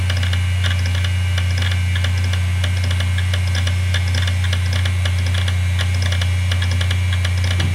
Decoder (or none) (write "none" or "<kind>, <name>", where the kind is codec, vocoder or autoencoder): none